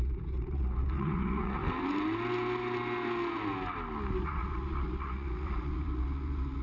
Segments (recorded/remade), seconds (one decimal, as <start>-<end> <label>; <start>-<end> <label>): 0.0-1.6 remade; 1.6-4.2 recorded; 4.2-6.6 remade